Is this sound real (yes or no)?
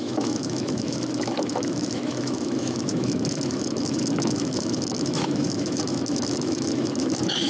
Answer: no